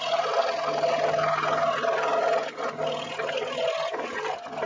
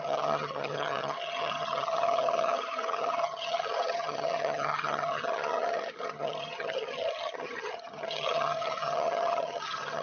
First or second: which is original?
first